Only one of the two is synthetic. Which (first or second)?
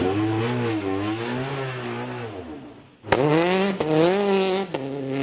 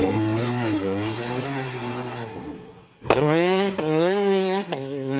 second